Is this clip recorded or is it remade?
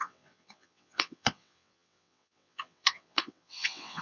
remade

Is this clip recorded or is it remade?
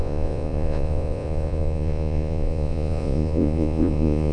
remade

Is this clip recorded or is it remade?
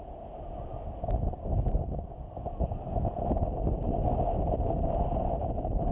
recorded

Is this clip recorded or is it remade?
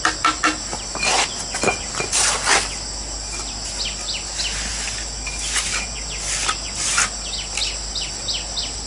recorded